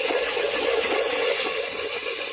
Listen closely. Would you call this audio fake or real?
fake